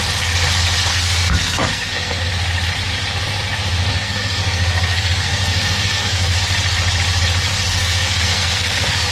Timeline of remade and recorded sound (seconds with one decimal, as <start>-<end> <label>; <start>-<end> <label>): 0.0-0.9 recorded; 0.9-2.3 remade; 2.3-3.9 recorded; 3.9-6.4 remade; 6.4-7.7 recorded; 7.7-9.1 remade